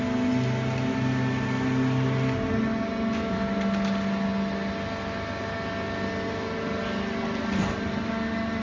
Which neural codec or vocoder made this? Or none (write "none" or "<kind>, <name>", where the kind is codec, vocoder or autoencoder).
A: none